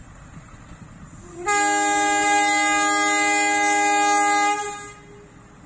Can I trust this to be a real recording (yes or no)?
yes